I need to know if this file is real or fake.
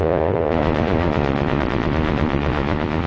fake